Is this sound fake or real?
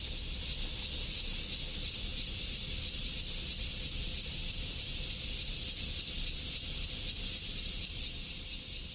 real